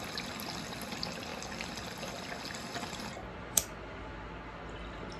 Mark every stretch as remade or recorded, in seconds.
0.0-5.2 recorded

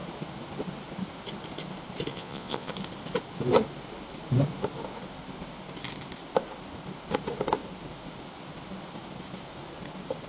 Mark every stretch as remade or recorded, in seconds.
0.0-2.1 recorded; 2.1-2.7 remade; 2.7-10.3 recorded

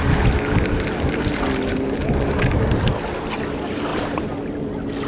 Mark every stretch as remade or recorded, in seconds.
0.0-5.1 recorded

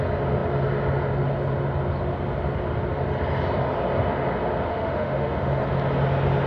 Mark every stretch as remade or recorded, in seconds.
0.0-4.7 recorded; 4.7-5.6 remade; 5.6-6.5 recorded